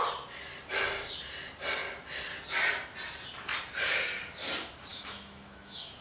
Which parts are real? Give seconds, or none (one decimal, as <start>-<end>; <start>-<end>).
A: 0.0-4.9

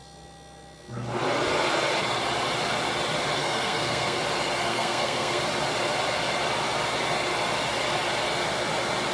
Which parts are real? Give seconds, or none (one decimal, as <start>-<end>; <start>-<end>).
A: 0.0-3.4; 4.2-4.7; 5.4-9.1

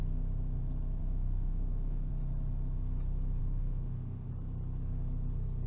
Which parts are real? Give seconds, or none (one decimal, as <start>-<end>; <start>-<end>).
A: 0.0-1.0; 2.1-3.4; 4.3-5.7

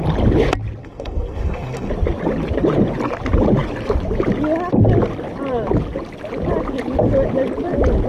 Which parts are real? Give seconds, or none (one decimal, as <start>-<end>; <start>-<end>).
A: 0.0-0.8; 1.9-8.1